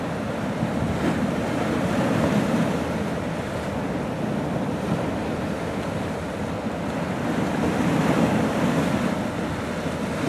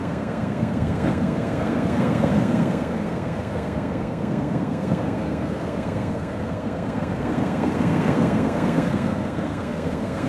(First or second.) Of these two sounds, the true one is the first